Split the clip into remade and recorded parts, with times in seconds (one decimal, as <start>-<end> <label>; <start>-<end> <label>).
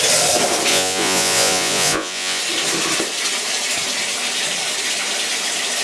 0.0-0.7 recorded; 0.7-2.4 remade; 2.4-5.8 recorded